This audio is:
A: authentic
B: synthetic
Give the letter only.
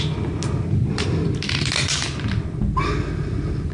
A